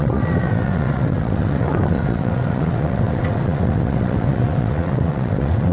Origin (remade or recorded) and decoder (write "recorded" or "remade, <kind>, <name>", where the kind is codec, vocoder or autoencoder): remade, vocoder, WaveNeXt